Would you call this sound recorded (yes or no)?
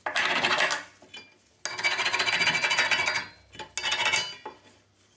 yes